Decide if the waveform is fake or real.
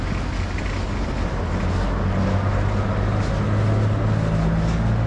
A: real